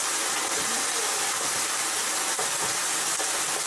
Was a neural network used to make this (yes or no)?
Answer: no